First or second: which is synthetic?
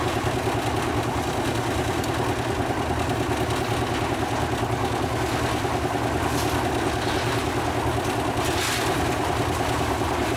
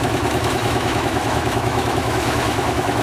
second